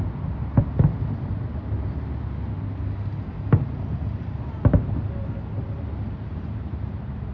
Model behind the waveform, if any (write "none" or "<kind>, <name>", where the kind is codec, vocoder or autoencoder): none